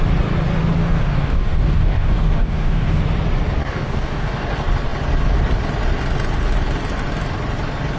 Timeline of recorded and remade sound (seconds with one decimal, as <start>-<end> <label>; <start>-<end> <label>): 0.0-0.8 recorded; 0.8-3.0 remade; 3.0-3.6 recorded; 3.6-4.4 remade; 4.4-8.0 recorded